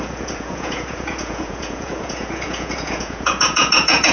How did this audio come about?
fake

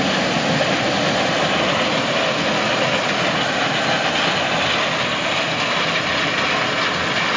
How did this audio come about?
real